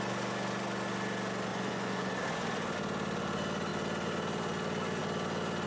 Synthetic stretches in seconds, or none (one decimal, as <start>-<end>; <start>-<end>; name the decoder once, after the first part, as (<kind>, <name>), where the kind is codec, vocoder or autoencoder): 1.5-2.1 (vocoder, Vocos)